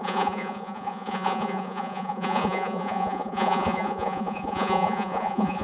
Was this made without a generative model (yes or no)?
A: no